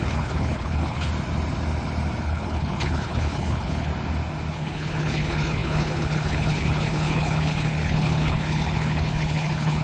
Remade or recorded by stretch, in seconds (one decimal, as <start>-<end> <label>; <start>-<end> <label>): 0.0-1.1 remade; 1.1-2.2 recorded; 2.2-3.9 remade; 3.9-4.5 recorded; 4.5-9.8 remade